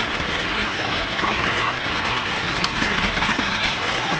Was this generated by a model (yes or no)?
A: yes